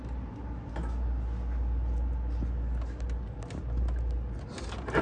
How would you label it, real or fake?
real